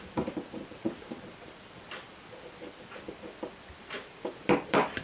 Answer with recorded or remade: remade